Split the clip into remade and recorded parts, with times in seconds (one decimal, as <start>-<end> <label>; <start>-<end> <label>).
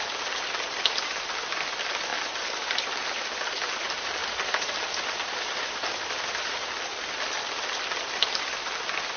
0.0-2.1 recorded; 2.1-3.2 remade; 3.2-4.2 recorded; 4.2-7.0 remade; 7.0-9.2 recorded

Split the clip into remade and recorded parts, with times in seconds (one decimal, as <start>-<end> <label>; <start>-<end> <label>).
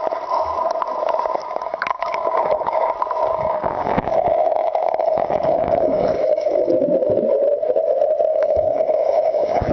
0.0-1.4 recorded; 1.4-2.9 remade; 2.9-3.3 recorded; 3.3-6.7 remade; 6.7-8.3 recorded; 8.3-9.7 remade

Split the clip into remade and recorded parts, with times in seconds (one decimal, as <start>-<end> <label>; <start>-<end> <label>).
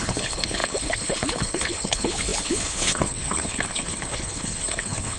0.0-5.2 remade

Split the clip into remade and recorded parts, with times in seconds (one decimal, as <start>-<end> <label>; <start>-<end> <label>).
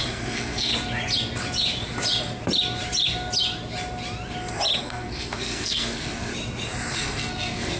0.0-0.7 remade; 0.7-4.8 recorded; 4.8-6.3 remade; 6.3-6.9 recorded; 6.9-7.8 remade